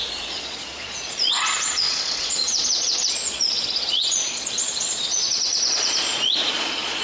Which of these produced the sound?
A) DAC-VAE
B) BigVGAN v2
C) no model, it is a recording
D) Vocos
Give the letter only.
D